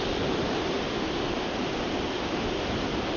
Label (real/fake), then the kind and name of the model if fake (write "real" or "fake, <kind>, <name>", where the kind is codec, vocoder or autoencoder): fake, vocoder, BigVGAN v2